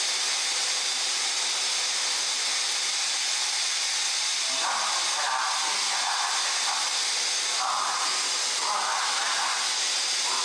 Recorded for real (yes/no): yes